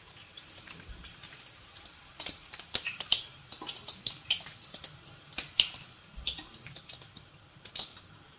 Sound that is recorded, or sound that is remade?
remade